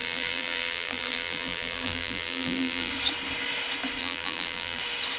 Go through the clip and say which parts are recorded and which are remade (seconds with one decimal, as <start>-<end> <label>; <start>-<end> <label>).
0.0-2.9 remade; 2.9-4.0 recorded; 4.0-4.8 remade; 4.8-5.2 recorded